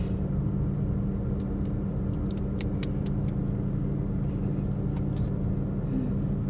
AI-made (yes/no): no